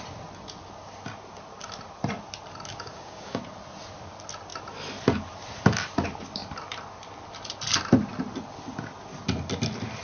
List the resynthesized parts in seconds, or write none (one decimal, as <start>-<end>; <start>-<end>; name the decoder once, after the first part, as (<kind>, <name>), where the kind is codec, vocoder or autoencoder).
2.7-3.4 (codec, DAC)